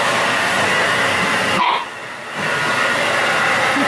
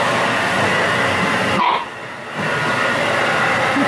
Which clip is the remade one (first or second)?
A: second